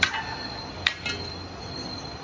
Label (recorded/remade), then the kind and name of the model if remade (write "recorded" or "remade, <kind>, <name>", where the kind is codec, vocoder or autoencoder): recorded